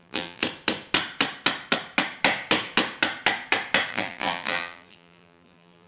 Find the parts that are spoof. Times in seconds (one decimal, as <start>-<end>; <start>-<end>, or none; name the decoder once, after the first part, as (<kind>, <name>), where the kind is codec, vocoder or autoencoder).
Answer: 0.0-0.4 (vocoder, BigVGAN v2); 3.9-5.9